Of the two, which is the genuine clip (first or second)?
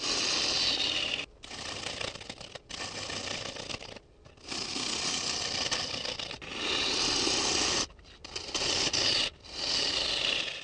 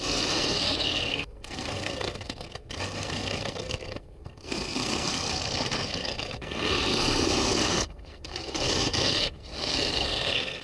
first